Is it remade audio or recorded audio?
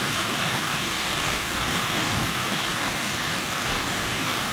remade